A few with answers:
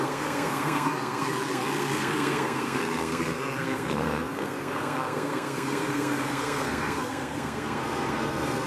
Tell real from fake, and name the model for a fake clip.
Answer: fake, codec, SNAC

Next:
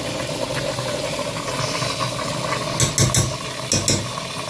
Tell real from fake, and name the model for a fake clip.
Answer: real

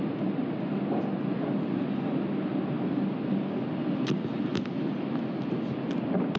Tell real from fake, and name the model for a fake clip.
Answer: real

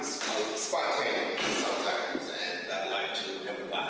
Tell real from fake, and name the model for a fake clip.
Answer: real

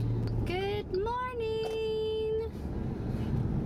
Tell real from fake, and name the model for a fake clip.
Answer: real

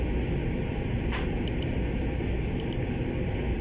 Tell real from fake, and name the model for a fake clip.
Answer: real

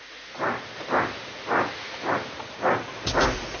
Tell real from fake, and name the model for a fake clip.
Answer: real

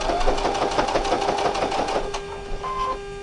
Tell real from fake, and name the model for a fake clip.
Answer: real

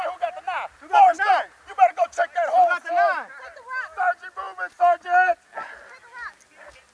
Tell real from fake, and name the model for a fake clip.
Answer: real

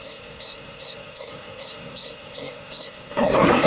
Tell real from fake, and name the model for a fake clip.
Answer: fake, codec, SNAC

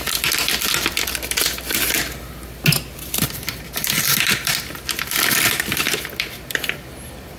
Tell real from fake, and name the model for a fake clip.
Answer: real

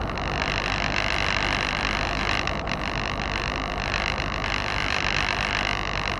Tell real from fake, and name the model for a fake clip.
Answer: fake, vocoder, BigVGAN v2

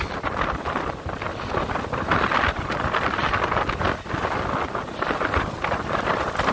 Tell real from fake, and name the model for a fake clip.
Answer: real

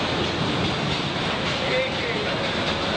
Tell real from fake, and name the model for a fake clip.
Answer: real